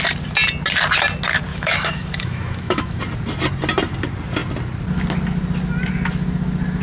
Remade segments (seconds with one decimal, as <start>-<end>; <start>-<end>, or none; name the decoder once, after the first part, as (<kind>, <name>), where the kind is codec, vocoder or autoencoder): 1.5-3.0 (autoencoder, DAC-VAE)